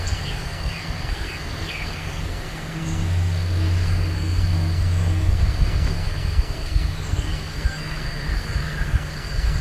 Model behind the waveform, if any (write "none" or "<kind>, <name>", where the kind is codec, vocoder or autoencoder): codec, SNAC